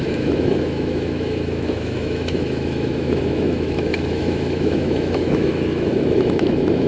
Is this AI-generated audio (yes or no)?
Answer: yes